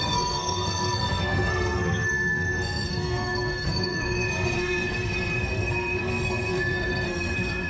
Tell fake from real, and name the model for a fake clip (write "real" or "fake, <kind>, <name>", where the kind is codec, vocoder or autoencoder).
fake, codec, SNAC